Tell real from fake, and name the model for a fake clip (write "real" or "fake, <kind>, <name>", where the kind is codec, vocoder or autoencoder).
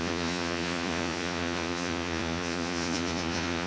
fake, vocoder, Vocos